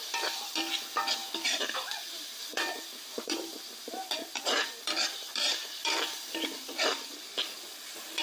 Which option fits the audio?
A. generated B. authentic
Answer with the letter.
A